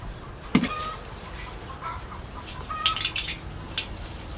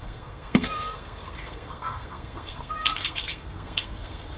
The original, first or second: first